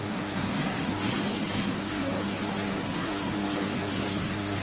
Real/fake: fake